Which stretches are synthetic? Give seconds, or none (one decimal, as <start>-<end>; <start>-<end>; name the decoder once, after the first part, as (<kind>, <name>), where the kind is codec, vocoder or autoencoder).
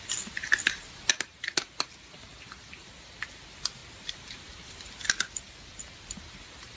none